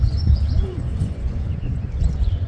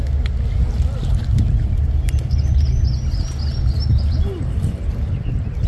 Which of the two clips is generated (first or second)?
first